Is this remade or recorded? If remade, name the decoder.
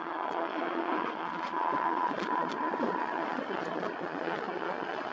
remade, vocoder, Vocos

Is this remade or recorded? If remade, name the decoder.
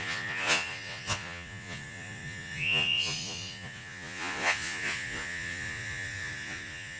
remade, vocoder, Vocos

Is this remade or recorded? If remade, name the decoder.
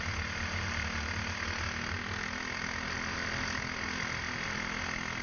recorded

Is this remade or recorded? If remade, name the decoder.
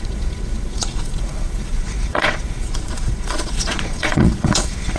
remade, vocoder, Vocos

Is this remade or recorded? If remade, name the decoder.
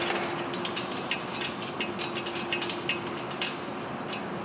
recorded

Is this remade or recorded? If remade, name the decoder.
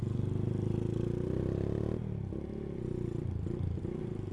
recorded